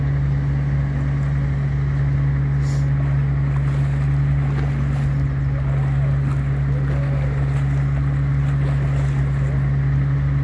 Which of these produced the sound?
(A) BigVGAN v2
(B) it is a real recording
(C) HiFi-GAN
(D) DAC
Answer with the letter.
B